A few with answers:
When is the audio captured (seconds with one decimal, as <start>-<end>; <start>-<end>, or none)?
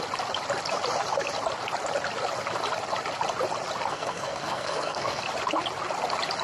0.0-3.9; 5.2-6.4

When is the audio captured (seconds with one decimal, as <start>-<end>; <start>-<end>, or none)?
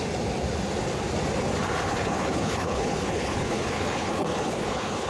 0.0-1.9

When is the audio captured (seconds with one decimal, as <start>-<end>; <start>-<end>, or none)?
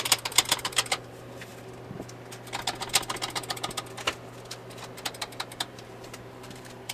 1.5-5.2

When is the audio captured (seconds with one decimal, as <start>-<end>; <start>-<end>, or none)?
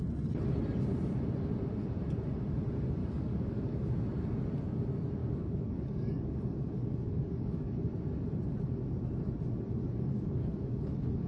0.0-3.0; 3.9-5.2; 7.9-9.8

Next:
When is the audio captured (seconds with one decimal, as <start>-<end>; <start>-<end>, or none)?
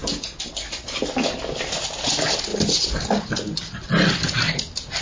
0.0-5.0